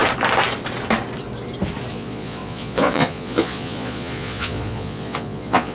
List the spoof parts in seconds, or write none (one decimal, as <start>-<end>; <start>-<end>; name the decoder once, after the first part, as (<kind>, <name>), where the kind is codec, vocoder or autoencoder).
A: 1.9-5.7 (vocoder, Vocos)